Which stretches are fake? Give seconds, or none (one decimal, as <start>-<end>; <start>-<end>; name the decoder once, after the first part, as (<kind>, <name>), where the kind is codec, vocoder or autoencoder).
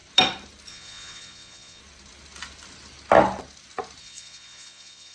0.7-1.8 (vocoder, Vocos); 4.0-5.1